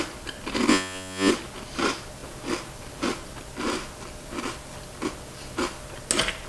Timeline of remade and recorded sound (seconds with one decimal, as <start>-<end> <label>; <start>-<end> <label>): 0.0-0.7 recorded; 0.7-1.3 remade; 1.3-6.5 recorded